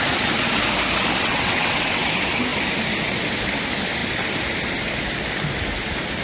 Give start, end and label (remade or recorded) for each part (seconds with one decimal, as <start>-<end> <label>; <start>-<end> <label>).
0.0-1.2 recorded; 1.2-2.1 remade; 2.1-6.2 recorded